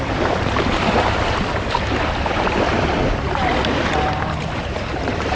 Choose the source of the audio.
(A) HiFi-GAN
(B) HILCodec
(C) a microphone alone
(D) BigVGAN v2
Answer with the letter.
D